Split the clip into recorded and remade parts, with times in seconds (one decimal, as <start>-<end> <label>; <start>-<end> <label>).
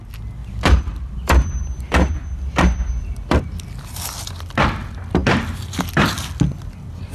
0.0-0.4 recorded; 0.4-3.4 remade; 3.4-7.1 recorded